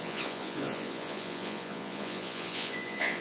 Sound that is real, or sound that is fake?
fake